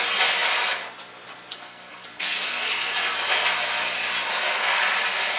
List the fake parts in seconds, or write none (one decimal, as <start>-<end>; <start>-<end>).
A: 1.5-2.7; 4.3-4.8